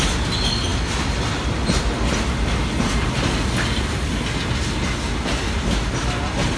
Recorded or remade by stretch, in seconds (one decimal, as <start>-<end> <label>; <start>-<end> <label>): 0.0-6.6 recorded